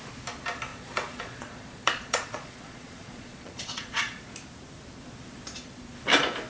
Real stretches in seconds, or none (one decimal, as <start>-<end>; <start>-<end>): 0.0-0.7; 4.2-6.5